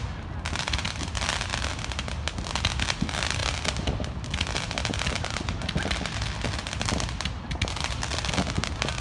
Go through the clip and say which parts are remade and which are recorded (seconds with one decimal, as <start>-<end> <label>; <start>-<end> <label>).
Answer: 0.0-1.5 remade; 1.5-3.0 recorded; 3.0-3.4 remade; 3.4-7.3 recorded; 7.3-9.0 remade